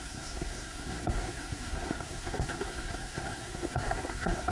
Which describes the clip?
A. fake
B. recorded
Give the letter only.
A